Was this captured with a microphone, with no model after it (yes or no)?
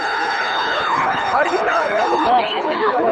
no